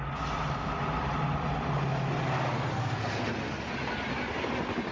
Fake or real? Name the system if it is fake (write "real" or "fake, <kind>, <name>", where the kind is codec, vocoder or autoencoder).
real